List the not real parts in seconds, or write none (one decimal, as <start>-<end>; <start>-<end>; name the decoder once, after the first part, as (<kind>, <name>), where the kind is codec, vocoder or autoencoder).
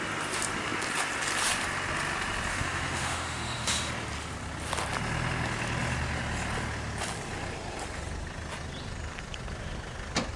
2.5-3.9 (autoencoder, DAC-VAE)